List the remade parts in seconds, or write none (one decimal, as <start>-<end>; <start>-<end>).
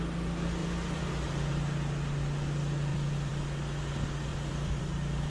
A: 0.6-1.5; 2.9-3.8; 4.3-5.3